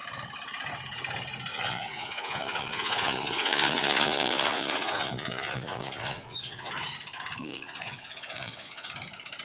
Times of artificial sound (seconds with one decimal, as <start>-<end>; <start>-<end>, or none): 1.5-6.7; 7.4-8.9